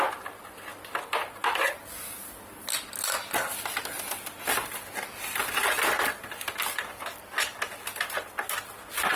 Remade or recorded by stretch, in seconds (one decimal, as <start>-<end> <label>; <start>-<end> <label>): 0.0-9.2 recorded